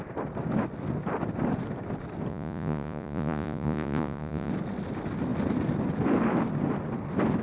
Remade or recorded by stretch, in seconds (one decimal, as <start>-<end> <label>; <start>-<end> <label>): 0.0-2.3 recorded; 2.3-4.5 remade; 4.5-7.4 recorded